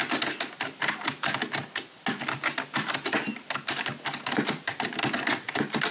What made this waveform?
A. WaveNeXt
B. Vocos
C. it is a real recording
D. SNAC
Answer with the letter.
C